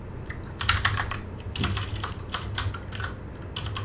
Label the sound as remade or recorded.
recorded